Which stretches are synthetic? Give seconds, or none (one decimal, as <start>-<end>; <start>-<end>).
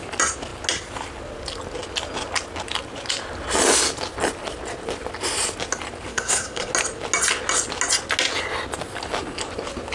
6.1-6.7